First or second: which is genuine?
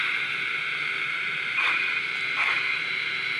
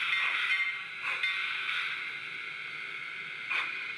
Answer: second